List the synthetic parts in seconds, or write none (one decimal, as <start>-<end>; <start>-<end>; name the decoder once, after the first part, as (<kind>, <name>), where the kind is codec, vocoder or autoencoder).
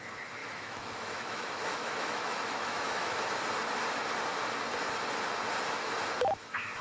0.4-3.2 (autoencoder, DAC-VAE)